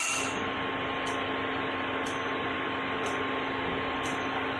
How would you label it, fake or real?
real